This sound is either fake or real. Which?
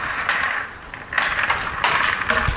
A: fake